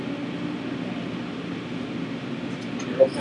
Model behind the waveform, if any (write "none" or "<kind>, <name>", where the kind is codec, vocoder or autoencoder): none